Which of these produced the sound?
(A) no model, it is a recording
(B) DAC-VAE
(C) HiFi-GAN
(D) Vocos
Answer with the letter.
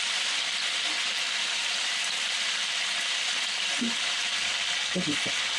A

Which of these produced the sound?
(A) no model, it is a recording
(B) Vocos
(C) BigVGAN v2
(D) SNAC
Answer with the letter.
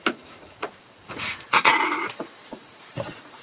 B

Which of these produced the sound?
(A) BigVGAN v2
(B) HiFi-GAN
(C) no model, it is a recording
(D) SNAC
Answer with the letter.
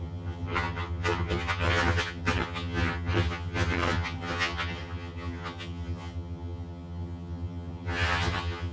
B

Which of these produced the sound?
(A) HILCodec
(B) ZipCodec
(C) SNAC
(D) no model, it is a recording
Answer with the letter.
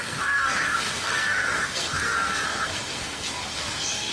C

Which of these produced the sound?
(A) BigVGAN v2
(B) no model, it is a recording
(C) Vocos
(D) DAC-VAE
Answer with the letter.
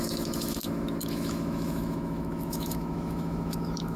D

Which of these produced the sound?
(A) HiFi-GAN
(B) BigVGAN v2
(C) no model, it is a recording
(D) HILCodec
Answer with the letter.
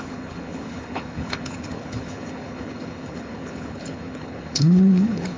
D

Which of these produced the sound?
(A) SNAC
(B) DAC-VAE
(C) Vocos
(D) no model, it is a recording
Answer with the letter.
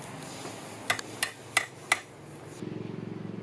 D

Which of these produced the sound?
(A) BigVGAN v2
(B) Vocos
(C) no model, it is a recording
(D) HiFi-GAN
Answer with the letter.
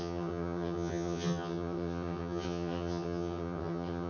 D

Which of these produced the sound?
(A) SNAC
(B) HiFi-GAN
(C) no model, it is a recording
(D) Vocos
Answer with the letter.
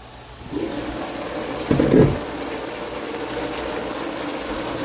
C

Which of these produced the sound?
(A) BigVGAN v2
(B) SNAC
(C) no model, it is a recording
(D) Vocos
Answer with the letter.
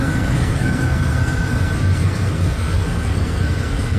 B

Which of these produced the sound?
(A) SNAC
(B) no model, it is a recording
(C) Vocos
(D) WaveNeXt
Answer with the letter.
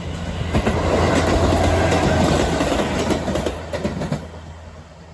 B